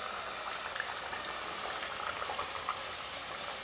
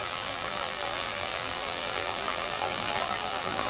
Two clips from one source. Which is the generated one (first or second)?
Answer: second